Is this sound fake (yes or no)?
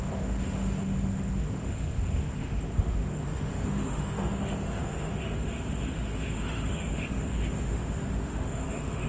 yes